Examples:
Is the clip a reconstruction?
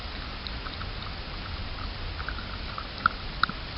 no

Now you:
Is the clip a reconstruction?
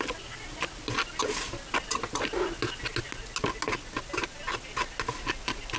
no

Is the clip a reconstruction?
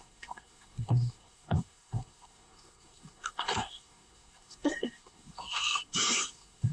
yes